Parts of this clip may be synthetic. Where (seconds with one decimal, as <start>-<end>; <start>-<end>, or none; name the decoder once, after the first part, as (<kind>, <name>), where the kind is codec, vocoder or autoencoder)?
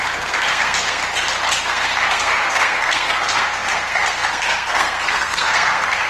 0.0-1.0 (codec, SNAC); 1.6-6.1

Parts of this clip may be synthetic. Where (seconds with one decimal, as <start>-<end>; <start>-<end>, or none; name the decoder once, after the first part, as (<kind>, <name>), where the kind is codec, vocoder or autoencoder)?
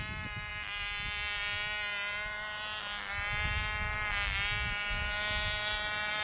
none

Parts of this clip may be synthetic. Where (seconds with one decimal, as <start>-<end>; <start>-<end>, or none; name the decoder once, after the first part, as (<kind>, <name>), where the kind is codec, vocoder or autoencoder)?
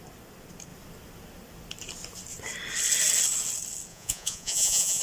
3.9-5.0 (vocoder, Vocos)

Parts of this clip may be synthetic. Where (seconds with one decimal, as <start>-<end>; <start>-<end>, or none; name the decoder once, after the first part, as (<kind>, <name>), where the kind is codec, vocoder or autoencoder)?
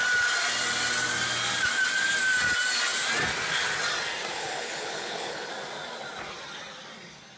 4.3-5.5 (codec, HILCodec)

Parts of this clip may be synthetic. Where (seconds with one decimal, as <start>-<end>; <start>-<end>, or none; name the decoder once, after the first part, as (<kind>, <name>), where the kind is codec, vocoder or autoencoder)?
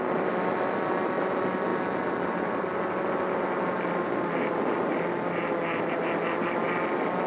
none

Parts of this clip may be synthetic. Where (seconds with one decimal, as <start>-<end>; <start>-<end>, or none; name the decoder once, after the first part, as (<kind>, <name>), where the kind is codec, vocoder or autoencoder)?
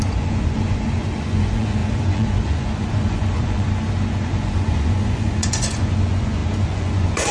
0.0-7.3 (vocoder, Vocos)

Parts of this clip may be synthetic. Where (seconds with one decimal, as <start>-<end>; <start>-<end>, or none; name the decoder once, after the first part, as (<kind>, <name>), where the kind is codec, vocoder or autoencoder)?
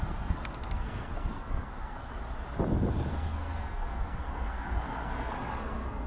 0.0-2.1 (codec, SNAC); 3.1-6.1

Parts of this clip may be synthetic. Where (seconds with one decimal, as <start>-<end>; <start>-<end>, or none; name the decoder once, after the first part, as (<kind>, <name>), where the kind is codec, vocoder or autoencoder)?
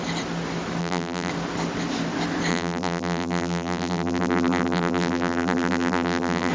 0.8-1.3 (vocoder, BigVGAN v2); 2.5-6.5